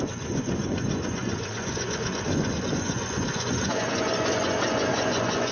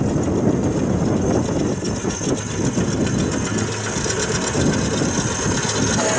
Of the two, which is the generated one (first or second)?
first